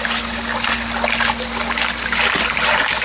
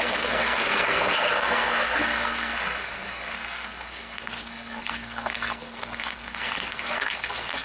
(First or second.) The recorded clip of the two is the first